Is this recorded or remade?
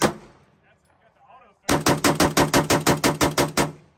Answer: recorded